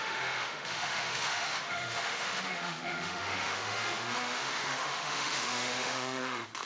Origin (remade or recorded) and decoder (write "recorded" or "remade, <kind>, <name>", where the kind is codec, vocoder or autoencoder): remade, autoencoder, DAC-VAE